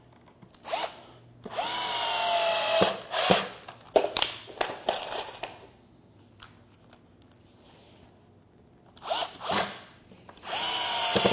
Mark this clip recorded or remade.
recorded